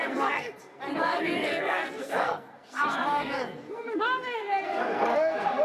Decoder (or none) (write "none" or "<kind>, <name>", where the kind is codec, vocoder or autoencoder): codec, SNAC